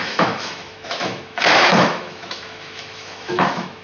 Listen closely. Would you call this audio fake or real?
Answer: fake